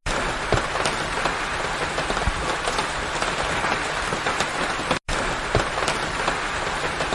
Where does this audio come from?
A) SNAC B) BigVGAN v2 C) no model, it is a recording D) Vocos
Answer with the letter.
C